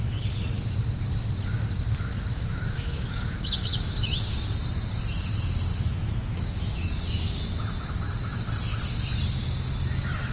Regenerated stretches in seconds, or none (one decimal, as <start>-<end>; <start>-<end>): 2.3-4.5; 5.7-6.9